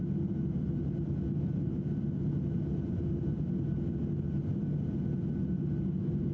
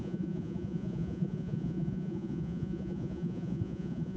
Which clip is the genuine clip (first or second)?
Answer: first